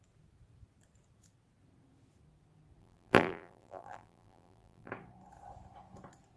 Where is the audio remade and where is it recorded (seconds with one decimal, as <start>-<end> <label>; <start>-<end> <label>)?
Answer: 0.0-2.8 recorded; 2.8-4.9 remade; 4.9-6.4 recorded